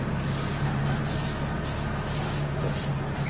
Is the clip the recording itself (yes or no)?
yes